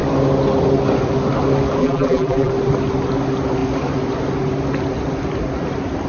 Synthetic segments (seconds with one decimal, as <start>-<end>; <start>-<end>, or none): 1.8-2.5